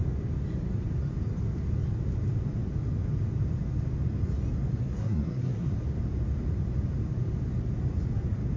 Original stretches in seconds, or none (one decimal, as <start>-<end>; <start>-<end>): 0.0-4.8; 5.7-8.6